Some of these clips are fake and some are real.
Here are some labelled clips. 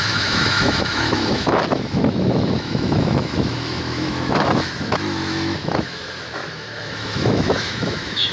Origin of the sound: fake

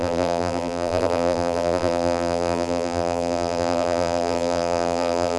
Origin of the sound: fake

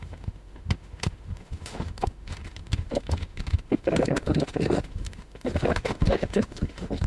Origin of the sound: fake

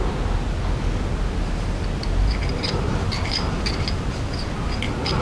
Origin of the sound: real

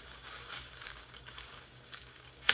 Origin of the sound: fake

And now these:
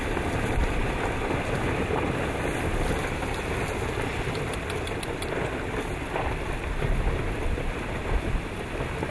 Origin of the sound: real